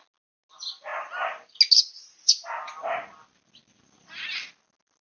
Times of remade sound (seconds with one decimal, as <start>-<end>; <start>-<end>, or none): none